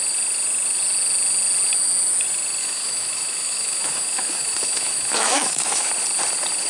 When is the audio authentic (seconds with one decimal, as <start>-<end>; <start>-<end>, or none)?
0.0-2.6; 5.9-6.7